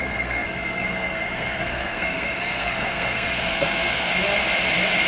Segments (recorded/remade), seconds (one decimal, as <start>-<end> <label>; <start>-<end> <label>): 0.0-4.1 remade; 4.1-5.1 recorded